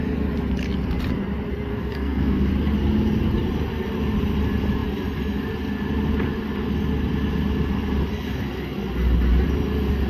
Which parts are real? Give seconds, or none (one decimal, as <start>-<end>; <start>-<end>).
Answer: 0.0-1.7; 2.5-10.1